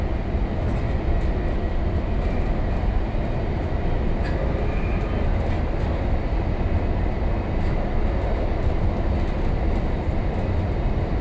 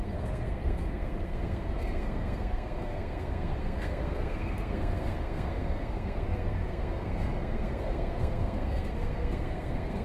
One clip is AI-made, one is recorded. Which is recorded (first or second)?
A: first